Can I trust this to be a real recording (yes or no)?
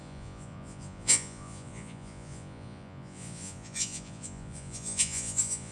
no